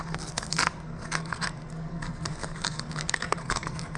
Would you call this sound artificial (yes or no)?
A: yes